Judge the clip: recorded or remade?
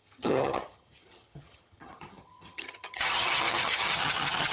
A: remade